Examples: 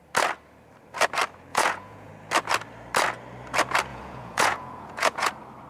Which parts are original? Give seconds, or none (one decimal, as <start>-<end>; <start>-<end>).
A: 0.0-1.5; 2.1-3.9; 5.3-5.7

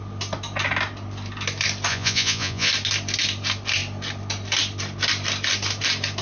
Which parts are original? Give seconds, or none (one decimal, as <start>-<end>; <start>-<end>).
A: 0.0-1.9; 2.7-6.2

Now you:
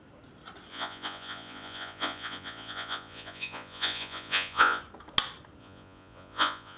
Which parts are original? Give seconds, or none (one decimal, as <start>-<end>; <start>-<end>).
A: 0.0-0.7; 4.8-5.6

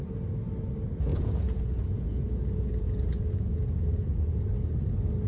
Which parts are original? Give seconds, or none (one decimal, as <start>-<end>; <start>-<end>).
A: 0.0-1.1; 4.3-5.3

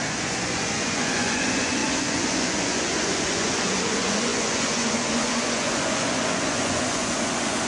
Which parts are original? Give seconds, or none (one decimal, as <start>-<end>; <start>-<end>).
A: none